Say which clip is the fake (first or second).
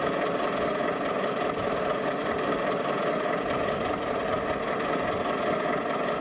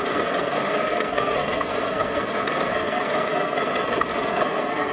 second